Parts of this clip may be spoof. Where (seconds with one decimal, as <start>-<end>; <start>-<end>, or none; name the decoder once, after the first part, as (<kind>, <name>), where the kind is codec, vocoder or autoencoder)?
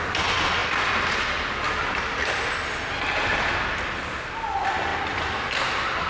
none